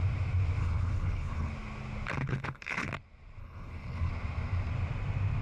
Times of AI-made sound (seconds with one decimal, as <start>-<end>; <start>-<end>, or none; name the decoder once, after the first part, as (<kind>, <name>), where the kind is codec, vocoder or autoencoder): 0.6-1.5 (codec, HILCodec); 2.2-2.9; 3.4-4.1